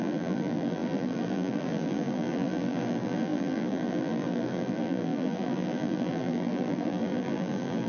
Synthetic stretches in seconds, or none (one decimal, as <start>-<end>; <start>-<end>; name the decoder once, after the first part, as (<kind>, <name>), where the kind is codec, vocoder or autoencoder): 0.0-7.9 (vocoder, BigVGAN v2)